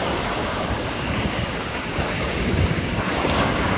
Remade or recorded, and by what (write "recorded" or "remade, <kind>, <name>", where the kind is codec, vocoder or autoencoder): remade, codec, DAC